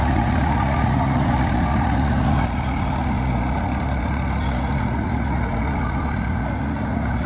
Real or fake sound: fake